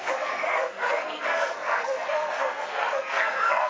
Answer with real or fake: fake